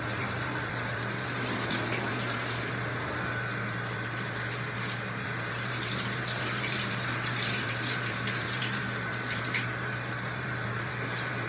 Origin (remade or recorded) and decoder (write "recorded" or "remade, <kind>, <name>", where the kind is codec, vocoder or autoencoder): remade, vocoder, BigVGAN v2